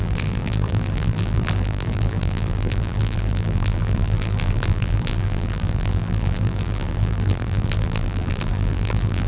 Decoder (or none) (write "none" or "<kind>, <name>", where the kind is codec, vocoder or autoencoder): vocoder, BigVGAN v2